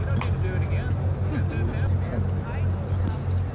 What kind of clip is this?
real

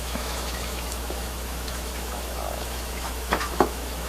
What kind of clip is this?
fake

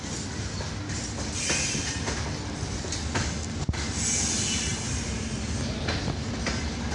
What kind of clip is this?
real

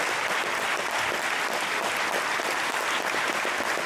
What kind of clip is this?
real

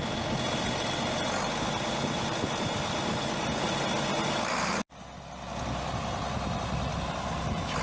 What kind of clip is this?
real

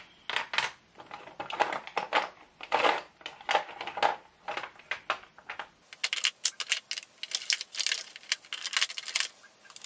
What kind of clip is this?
real